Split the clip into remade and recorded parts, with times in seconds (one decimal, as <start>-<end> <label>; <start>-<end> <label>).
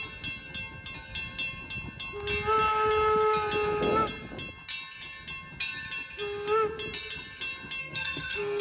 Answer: 0.0-7.8 recorded; 7.8-8.6 remade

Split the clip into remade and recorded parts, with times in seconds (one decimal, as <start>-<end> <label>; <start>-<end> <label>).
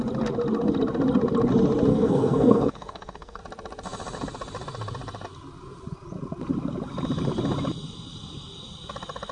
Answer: 0.0-1.9 recorded; 1.9-3.4 remade; 3.4-9.3 recorded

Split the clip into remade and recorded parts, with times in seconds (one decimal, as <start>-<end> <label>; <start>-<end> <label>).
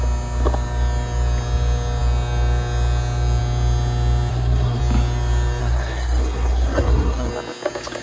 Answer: 0.0-4.3 recorded; 4.3-4.8 remade; 4.8-5.6 recorded; 5.6-7.3 remade; 7.3-8.0 recorded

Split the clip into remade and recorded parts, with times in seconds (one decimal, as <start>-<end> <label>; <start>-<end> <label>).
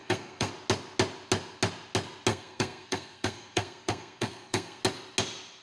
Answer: 0.0-0.5 remade; 0.5-2.3 recorded; 2.3-4.8 remade; 4.8-5.6 recorded